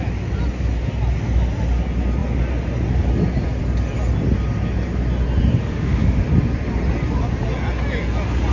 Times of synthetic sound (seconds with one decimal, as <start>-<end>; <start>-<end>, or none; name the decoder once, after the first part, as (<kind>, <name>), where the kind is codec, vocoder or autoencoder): 5.6-6.2 (autoencoder, DAC-VAE)